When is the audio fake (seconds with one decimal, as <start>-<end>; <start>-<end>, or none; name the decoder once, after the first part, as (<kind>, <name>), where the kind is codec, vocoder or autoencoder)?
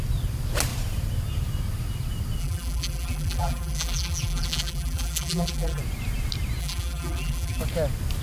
2.4-5.8 (vocoder, BigVGAN v2); 6.6-7.6